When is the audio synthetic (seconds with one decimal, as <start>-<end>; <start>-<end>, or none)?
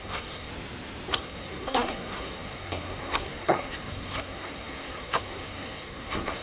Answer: 0.0-0.5; 1.1-6.4